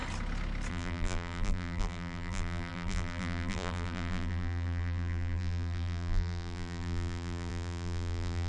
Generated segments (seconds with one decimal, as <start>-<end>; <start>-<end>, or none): 0.7-8.5